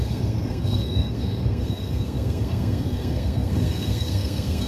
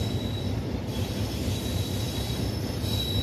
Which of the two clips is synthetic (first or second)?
first